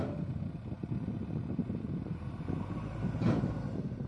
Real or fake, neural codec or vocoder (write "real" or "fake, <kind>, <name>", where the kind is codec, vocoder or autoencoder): real